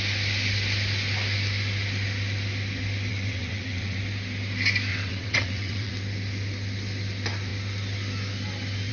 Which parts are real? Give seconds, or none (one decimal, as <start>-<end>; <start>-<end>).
0.0-3.1; 4.0-4.9; 5.9-8.9